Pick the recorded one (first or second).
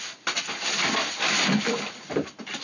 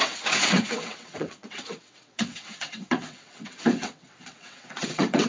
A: first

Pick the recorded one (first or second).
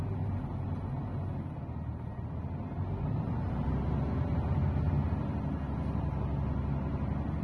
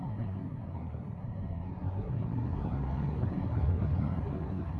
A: first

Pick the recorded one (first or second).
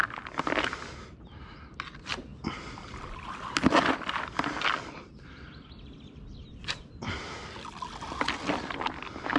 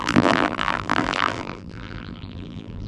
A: first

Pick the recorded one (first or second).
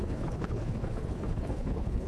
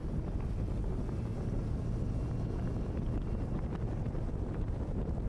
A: second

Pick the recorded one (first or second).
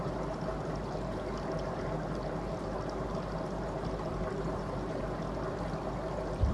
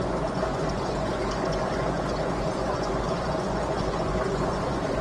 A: first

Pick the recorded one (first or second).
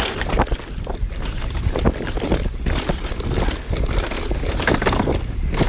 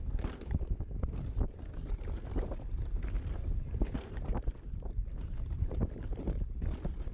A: first